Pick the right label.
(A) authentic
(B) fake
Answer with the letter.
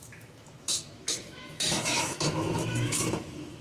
B